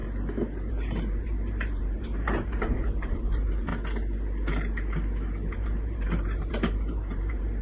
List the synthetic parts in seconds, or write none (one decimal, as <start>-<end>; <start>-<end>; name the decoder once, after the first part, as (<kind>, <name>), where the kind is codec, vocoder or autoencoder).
0.7-3.7 (vocoder, BigVGAN v2); 5.5-7.6